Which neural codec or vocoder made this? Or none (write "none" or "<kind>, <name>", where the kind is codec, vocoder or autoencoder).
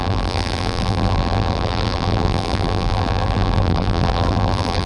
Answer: vocoder, BigVGAN v2